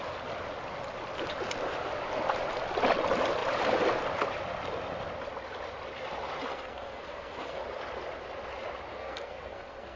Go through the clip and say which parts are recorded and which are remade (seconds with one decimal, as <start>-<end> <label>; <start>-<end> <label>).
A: 0.0-6.5 recorded; 6.5-7.6 remade; 7.6-8.9 recorded; 8.9-10.0 remade